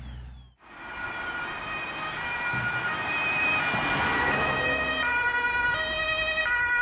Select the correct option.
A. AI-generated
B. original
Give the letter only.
B